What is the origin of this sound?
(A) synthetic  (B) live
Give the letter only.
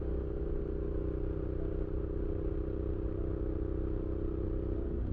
B